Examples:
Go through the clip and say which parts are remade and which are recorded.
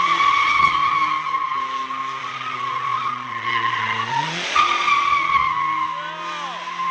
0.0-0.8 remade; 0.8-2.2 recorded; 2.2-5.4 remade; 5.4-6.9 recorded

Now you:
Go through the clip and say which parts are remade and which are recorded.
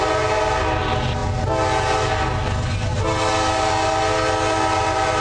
0.0-2.9 recorded; 2.9-3.7 remade; 3.7-5.2 recorded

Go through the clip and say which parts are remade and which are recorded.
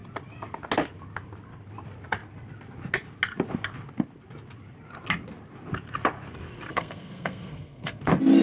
0.0-6.7 recorded; 6.7-8.0 remade; 8.0-8.4 recorded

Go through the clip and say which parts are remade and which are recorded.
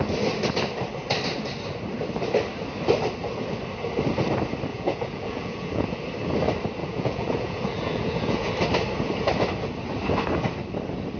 0.0-4.7 recorded; 4.7-6.0 remade; 6.0-6.8 recorded; 6.8-8.5 remade; 8.5-11.2 recorded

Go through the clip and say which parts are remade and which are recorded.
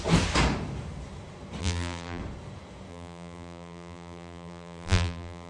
0.0-1.6 recorded; 1.6-2.2 remade; 2.2-2.9 recorded; 2.9-5.5 remade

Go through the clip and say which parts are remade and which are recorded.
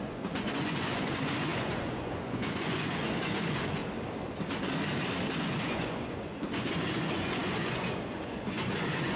0.0-3.8 remade; 3.8-5.4 recorded; 5.4-9.2 remade